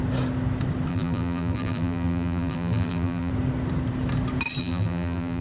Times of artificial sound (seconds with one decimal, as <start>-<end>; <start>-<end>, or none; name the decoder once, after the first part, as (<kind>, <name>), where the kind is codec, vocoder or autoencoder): 0.9-3.3 (vocoder, BigVGAN v2); 4.6-5.4